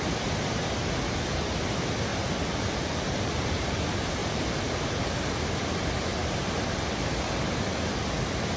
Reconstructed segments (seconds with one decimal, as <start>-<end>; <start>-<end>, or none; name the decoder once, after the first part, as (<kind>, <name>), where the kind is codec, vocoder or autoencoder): 2.1-3.7 (vocoder, BigVGAN v2); 4.2-5.2; 6.2-7.4